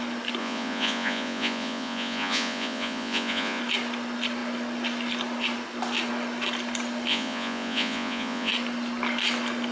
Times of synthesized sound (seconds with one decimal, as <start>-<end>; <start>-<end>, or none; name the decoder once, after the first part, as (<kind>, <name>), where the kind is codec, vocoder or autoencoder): 0.4-3.6 (vocoder, Vocos); 7.1-8.5